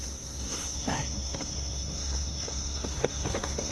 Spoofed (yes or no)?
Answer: yes